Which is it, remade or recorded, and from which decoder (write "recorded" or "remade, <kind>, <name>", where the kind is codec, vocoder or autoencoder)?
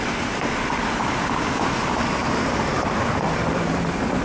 recorded